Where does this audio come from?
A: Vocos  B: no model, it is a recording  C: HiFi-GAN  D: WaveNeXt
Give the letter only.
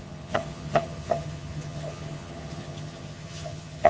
C